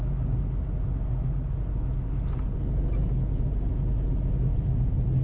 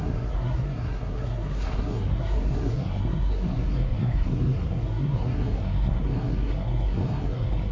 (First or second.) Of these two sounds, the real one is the first